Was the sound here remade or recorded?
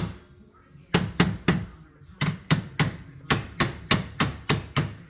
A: recorded